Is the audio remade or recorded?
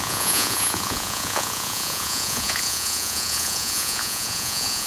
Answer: remade